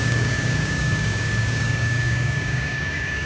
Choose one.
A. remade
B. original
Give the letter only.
A